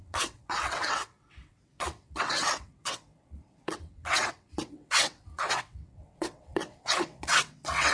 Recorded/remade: remade